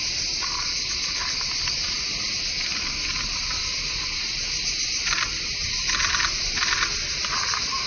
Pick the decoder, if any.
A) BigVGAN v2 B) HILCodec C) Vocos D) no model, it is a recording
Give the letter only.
D